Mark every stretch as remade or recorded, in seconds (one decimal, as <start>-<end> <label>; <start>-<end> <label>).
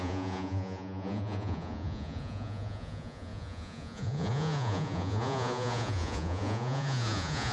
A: 0.0-7.5 remade